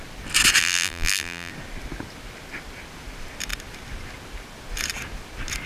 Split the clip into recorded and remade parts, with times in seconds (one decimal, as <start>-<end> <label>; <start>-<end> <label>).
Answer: 0.0-0.6 recorded; 0.6-1.5 remade; 1.5-5.7 recorded